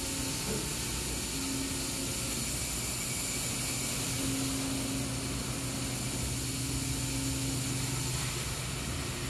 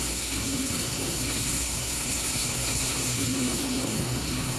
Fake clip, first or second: second